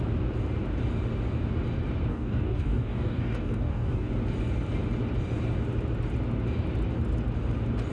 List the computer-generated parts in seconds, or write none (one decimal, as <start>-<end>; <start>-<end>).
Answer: 2.1-4.1